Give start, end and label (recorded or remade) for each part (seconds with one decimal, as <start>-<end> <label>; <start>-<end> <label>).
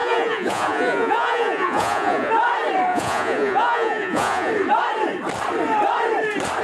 0.0-2.3 remade; 2.3-2.9 recorded; 2.9-4.5 remade; 4.5-6.6 recorded